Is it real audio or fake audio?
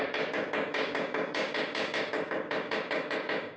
fake